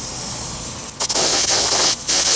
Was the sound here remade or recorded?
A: recorded